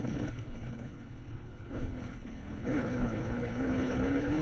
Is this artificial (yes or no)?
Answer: yes